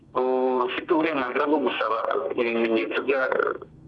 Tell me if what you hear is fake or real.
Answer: fake